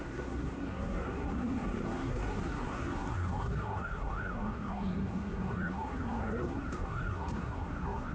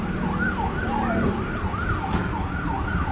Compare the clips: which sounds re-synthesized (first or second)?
first